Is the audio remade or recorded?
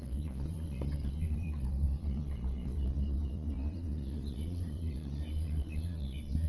remade